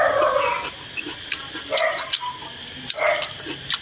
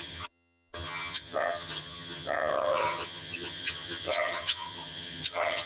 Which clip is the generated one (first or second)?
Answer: second